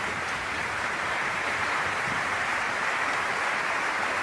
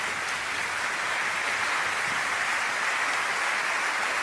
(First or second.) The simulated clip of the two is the first